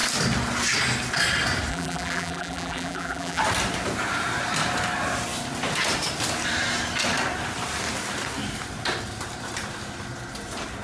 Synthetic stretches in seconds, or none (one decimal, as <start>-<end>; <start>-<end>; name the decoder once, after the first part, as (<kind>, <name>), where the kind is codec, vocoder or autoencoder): 1.7-3.4 (vocoder, BigVGAN v2)